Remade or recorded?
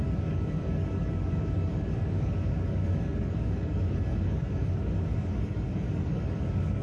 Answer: remade